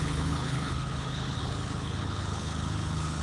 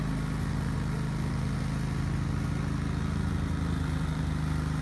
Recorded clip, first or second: second